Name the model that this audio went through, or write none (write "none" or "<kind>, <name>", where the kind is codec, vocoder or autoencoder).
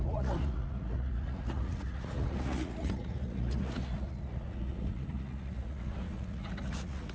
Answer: vocoder, Vocos